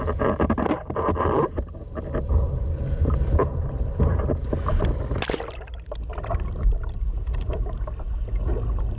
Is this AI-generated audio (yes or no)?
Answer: no